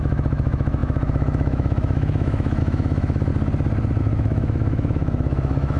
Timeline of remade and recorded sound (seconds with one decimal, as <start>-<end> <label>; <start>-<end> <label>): 0.0-3.3 remade; 3.3-4.0 recorded; 4.0-5.8 remade